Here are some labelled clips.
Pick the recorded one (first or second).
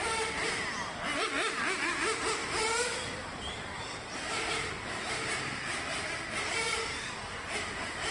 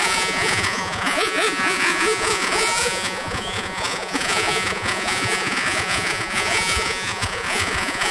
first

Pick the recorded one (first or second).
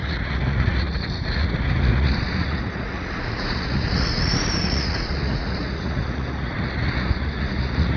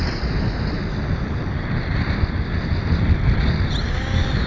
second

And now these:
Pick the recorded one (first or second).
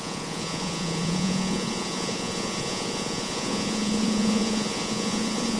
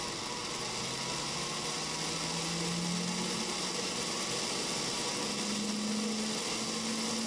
second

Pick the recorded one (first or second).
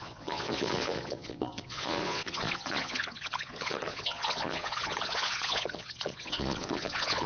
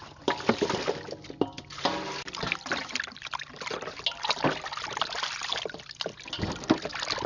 second